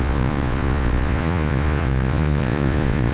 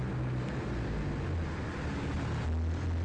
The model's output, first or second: first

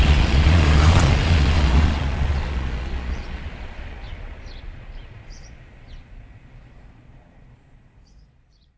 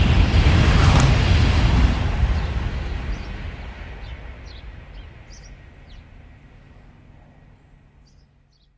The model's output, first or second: first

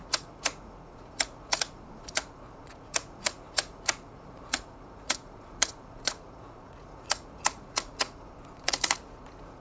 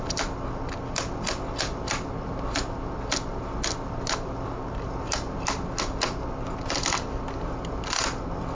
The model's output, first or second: first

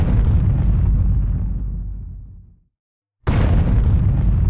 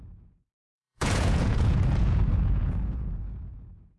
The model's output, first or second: second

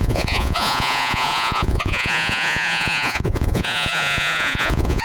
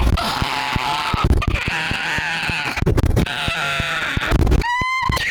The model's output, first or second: first